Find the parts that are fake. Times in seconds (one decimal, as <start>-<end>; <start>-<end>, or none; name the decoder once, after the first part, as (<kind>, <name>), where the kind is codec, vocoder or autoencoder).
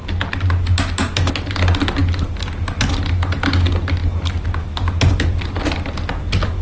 none